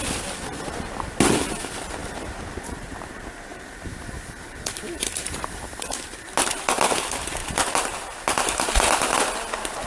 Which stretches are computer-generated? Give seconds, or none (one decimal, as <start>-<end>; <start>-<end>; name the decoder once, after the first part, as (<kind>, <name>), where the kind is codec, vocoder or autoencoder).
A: 3.5-6.0 (vocoder, BigVGAN v2)